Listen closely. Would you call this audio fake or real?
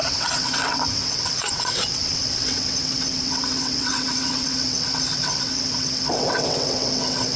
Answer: fake